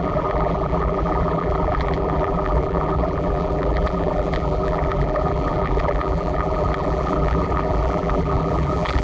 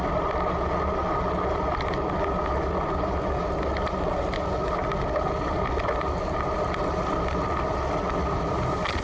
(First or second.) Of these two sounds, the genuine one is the second